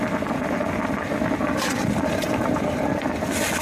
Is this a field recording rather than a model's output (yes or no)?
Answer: yes